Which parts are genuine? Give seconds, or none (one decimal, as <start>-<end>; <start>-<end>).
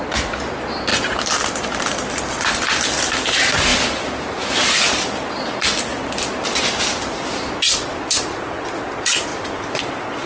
0.0-3.7; 8.8-9.3; 9.8-10.3